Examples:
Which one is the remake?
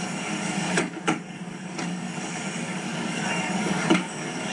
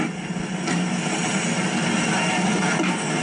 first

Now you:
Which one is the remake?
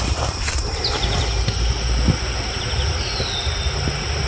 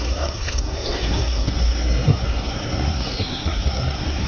second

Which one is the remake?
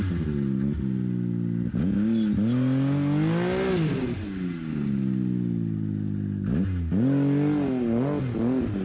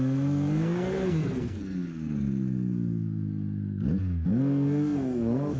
second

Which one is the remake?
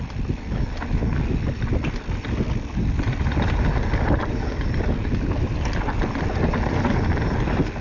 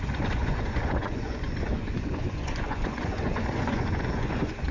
second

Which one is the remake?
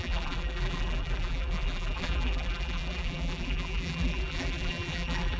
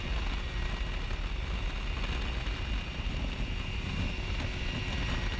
first